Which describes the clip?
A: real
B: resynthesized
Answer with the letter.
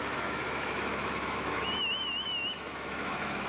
B